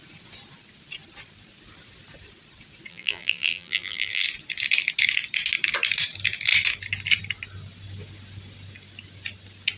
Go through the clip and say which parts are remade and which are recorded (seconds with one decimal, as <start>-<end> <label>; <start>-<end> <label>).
0.0-2.9 recorded; 2.9-4.2 remade; 4.2-9.8 recorded